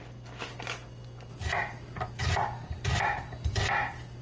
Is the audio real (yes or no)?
yes